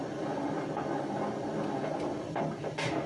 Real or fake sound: real